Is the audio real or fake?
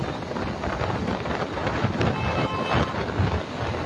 real